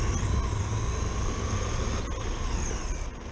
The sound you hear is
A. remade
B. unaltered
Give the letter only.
B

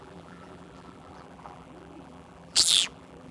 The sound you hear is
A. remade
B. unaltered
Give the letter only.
A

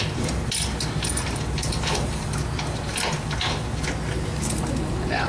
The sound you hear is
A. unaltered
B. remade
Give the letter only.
A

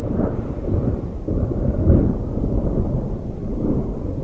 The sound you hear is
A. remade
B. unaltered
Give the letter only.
A